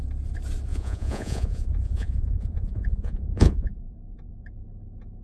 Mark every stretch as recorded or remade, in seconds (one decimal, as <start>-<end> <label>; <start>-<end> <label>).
0.0-0.7 recorded; 0.7-3.8 remade; 3.8-5.2 recorded